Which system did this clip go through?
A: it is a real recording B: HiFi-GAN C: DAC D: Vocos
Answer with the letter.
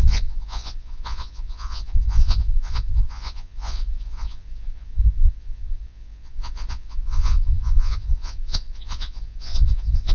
D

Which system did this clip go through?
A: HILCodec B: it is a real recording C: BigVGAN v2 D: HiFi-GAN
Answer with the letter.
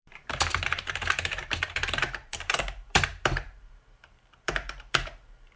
C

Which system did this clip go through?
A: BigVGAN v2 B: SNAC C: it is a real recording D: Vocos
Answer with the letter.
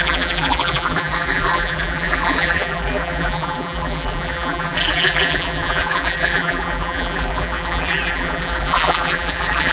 A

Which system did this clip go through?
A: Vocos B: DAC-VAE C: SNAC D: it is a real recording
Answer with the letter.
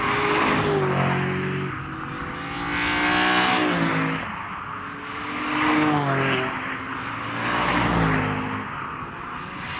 D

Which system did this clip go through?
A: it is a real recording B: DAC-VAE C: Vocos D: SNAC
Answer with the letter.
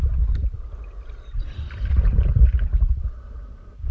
A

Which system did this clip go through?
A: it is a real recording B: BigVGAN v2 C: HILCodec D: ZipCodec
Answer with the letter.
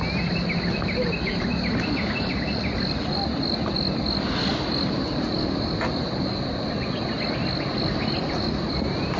A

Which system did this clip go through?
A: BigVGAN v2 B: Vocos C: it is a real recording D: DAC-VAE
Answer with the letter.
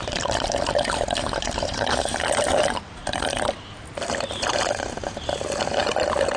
A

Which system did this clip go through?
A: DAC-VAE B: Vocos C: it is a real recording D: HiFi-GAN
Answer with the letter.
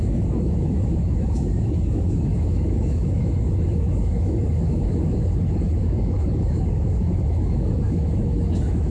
A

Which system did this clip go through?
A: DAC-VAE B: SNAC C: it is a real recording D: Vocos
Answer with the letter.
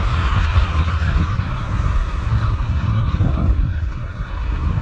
B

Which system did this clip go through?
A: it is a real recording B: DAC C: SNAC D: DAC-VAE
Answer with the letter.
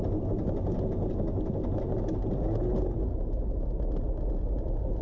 A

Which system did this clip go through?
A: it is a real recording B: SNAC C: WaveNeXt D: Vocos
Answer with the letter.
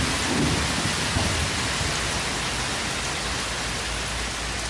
A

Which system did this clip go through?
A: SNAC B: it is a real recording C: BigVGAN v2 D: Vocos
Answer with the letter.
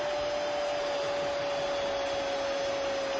B